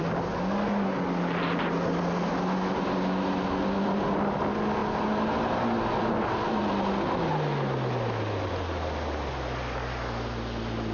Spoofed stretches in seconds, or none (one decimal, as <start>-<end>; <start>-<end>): none